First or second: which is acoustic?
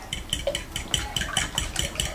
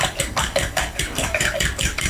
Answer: first